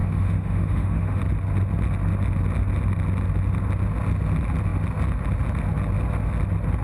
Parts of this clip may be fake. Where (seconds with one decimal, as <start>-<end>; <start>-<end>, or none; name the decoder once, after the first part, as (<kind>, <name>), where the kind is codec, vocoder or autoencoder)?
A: 0.0-1.2 (autoencoder, DAC-VAE)